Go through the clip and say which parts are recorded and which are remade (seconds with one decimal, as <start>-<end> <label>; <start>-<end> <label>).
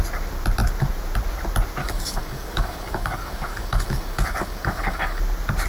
0.0-1.8 recorded; 1.8-5.2 remade; 5.2-5.7 recorded